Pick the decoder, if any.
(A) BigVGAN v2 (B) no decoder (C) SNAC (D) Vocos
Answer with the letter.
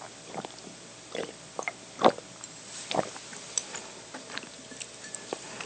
A